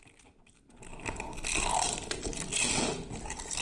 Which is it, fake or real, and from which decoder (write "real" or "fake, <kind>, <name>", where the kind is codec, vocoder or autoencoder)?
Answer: real